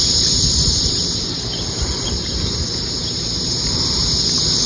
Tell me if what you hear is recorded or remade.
remade